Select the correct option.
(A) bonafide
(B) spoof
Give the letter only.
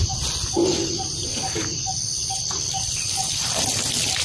A